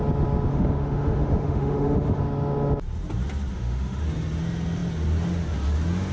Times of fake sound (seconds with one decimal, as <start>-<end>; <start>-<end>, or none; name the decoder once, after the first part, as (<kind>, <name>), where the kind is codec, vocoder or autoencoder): 0.5-2.2 (autoencoder, DAC-VAE); 3.5-4.0